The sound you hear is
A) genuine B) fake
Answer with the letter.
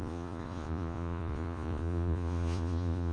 B